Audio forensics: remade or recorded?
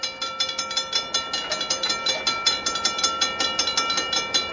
recorded